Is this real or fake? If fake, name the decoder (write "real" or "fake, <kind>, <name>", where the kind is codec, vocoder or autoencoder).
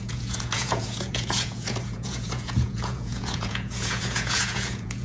fake, vocoder, Vocos